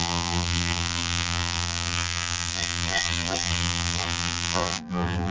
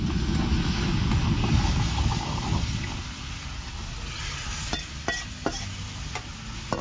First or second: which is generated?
first